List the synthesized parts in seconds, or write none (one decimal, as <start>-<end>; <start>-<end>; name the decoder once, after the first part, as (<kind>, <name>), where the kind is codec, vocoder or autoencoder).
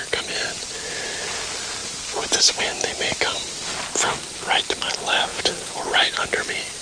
1.8-2.6 (vocoder, Vocos); 5.3-5.8